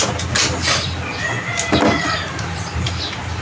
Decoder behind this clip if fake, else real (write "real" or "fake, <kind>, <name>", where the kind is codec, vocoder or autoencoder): real